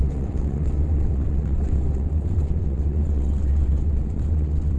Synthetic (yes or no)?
yes